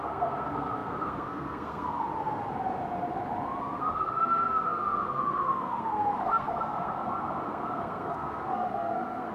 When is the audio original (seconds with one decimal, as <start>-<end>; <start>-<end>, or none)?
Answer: 2.1-3.6